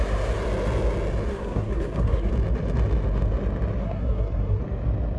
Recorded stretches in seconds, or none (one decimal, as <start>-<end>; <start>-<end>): 0.0-1.3; 2.3-3.8; 4.6-5.2